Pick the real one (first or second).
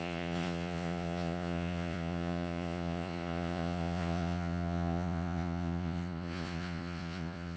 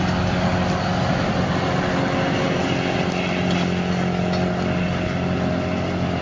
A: second